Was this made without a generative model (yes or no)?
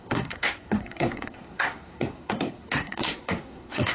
no